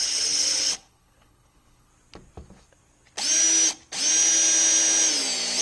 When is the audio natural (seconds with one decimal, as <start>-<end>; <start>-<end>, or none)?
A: 1.9-5.6

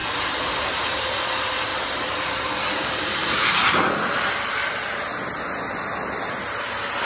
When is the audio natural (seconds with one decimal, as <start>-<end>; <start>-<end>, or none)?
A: 0.0-1.7; 4.5-7.1